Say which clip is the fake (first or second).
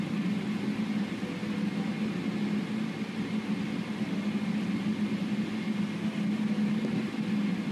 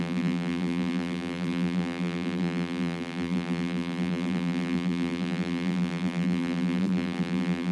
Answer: second